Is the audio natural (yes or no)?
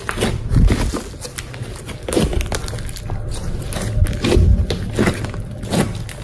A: yes